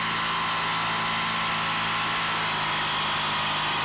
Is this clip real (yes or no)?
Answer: yes